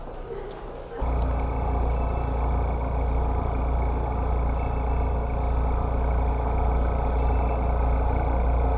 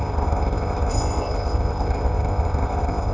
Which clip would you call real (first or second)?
first